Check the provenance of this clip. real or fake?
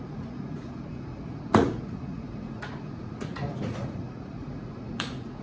fake